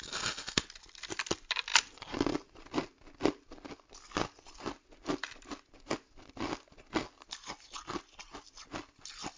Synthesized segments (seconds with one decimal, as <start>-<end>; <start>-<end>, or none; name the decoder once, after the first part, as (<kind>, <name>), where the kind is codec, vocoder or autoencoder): none

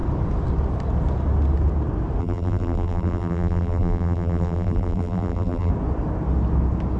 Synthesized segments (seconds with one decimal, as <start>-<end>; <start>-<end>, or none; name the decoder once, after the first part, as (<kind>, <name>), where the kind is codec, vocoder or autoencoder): 2.2-5.7 (vocoder, BigVGAN v2)

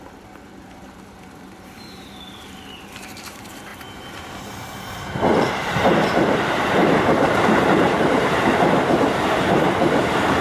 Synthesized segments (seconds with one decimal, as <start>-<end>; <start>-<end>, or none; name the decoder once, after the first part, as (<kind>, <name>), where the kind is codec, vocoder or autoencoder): 0.0-10.4 (vocoder, BigVGAN v2)

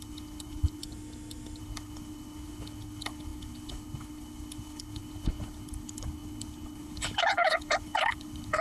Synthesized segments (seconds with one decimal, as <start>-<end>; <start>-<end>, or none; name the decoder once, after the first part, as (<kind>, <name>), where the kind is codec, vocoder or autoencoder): 0.0-0.8 (codec, HILCodec); 1.6-8.6

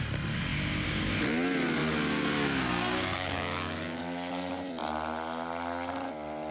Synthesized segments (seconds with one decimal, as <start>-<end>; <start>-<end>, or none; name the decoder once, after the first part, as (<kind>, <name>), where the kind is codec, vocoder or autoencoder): 0.5-1.1 (codec, DAC); 1.8-4.0